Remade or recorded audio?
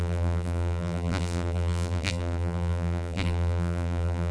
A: remade